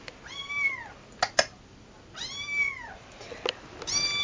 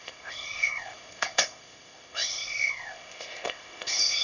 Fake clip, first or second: second